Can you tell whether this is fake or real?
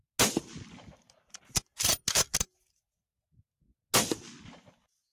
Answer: real